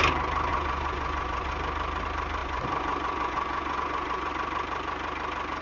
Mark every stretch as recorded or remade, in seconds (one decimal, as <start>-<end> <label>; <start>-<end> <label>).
0.0-0.5 recorded; 0.5-1.5 remade; 1.5-2.4 recorded; 2.4-4.3 remade; 4.3-5.6 recorded